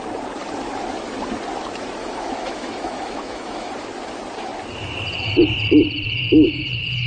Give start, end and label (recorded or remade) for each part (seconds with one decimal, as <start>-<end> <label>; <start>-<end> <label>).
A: 0.0-2.0 recorded; 2.0-3.7 remade; 3.7-7.1 recorded